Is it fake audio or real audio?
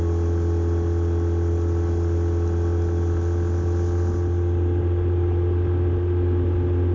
real